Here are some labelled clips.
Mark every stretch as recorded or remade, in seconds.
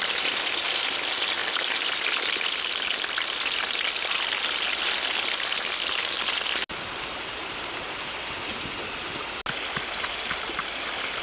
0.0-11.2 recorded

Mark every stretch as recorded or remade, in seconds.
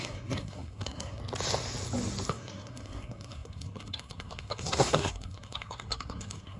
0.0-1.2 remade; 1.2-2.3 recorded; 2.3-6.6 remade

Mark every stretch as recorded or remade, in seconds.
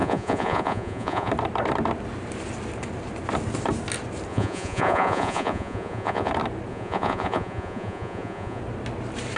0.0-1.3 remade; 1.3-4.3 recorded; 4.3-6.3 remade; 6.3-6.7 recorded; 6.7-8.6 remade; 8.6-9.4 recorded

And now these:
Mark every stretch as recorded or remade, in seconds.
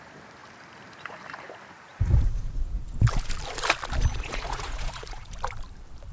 0.0-1.9 recorded; 1.9-2.8 remade; 2.8-4.1 recorded; 4.1-5.3 remade; 5.3-6.1 recorded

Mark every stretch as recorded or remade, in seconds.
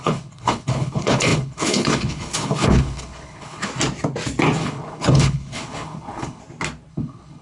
0.0-3.7 remade; 3.7-4.6 recorded; 4.6-6.4 remade; 6.4-6.9 recorded; 6.9-7.4 remade